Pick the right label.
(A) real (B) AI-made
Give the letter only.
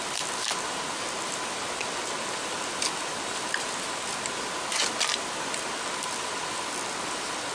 A